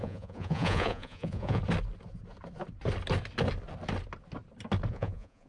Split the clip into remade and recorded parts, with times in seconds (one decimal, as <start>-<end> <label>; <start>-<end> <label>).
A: 0.0-1.6 remade; 1.6-4.9 recorded; 4.9-5.5 remade